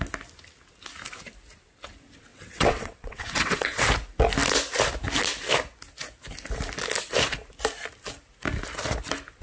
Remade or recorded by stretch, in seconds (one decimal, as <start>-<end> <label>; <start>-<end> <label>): 0.0-2.3 recorded; 2.3-3.8 remade; 3.8-9.4 recorded